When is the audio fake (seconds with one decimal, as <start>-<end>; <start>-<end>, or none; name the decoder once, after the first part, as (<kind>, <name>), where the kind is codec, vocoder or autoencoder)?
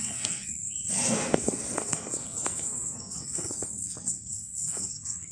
0.0-5.3 (codec, SNAC)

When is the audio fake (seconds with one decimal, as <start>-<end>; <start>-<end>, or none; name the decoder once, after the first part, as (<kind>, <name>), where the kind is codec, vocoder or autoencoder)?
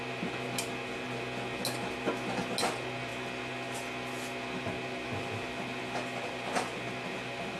none